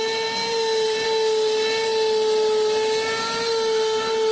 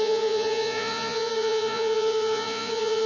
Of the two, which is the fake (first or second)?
second